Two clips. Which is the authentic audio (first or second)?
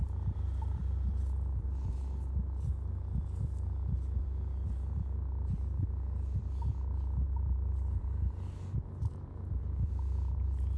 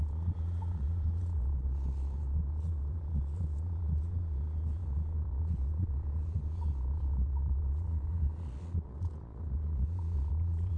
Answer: first